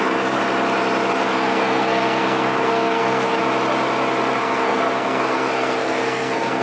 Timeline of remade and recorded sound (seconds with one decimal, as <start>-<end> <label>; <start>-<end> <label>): 0.0-0.4 remade; 0.4-1.1 recorded; 1.1-3.4 remade; 3.4-4.4 recorded; 4.4-6.6 remade